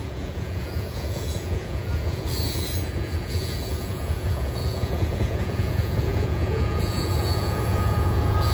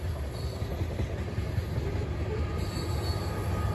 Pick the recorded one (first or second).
second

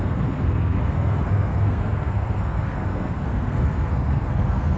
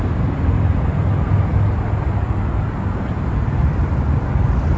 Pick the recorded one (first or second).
second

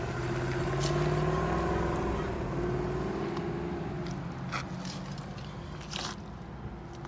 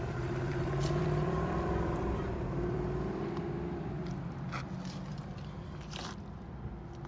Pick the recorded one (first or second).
first